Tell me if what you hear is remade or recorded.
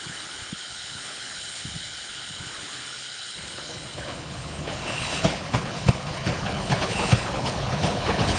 remade